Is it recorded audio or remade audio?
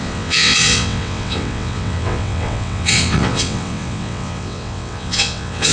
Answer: remade